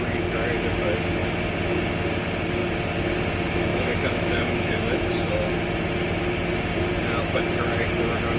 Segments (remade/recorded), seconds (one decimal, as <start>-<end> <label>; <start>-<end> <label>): 0.0-3.7 recorded; 3.7-5.5 remade; 5.5-8.4 recorded